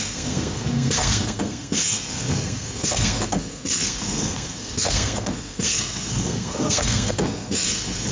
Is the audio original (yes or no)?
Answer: no